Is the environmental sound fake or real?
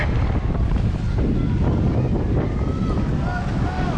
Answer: real